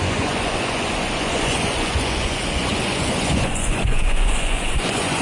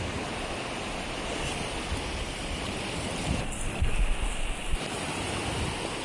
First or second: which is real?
second